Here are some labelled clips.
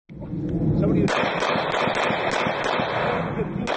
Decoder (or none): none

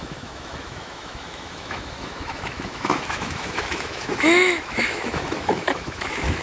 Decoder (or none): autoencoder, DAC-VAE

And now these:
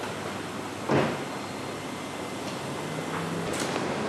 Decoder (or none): none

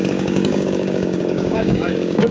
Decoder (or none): codec, DAC